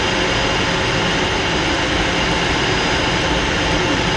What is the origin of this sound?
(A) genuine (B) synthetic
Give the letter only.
A